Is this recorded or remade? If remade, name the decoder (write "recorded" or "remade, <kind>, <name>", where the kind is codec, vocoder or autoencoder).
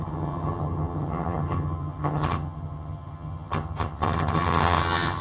remade, vocoder, HiFi-GAN